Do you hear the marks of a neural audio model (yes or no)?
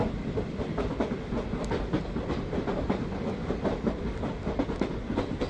no